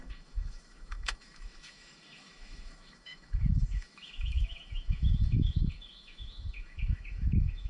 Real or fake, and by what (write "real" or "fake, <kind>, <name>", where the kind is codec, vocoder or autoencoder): fake, autoencoder, DAC-VAE